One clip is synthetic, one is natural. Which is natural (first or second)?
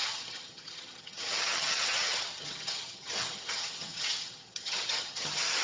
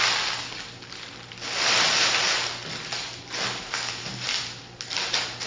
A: second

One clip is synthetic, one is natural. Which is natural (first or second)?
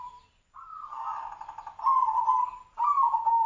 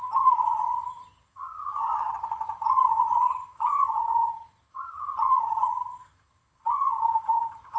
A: first